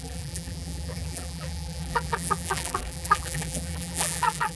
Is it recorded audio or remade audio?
remade